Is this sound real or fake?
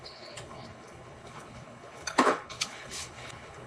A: fake